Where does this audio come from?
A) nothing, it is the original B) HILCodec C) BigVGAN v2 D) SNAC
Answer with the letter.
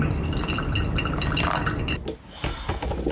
A